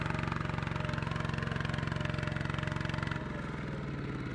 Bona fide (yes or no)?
yes